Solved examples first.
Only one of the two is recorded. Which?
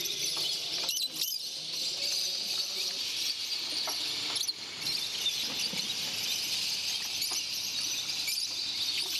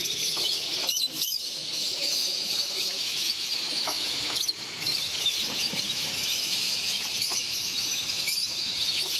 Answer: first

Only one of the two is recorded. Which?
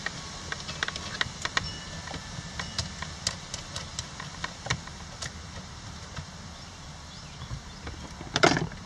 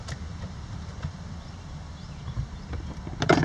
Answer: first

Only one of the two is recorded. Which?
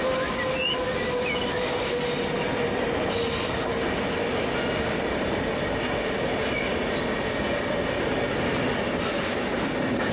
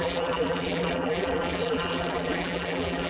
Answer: first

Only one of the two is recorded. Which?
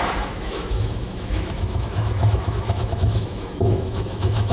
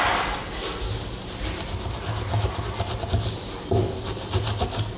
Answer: second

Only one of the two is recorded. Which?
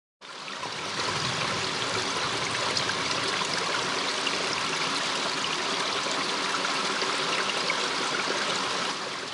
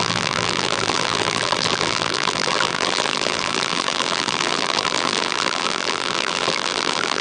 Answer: first